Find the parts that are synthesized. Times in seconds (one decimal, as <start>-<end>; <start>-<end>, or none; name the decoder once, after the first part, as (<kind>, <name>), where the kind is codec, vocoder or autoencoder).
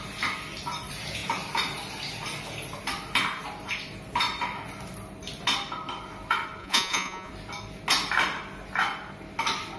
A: 6.6-7.3 (vocoder, Vocos)